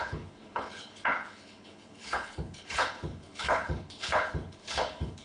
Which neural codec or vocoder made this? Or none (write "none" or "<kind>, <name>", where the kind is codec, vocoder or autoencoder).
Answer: codec, HILCodec